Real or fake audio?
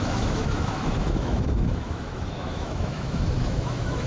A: fake